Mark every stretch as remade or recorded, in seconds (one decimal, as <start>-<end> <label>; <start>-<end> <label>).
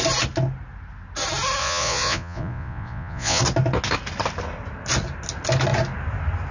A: 0.0-1.6 recorded; 1.6-3.4 remade; 3.4-6.5 recorded